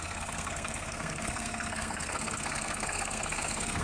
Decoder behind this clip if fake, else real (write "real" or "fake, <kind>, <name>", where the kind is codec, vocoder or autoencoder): fake, codec, SNAC